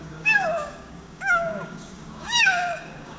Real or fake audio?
fake